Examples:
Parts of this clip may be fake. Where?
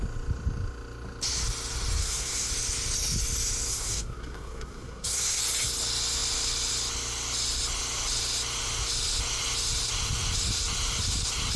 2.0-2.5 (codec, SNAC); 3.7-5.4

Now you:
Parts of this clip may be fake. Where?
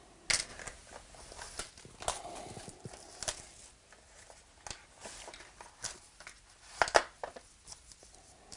none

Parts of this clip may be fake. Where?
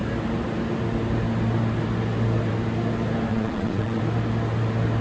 3.3-4.0 (vocoder, Vocos)